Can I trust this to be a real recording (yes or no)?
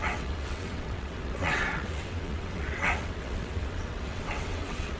no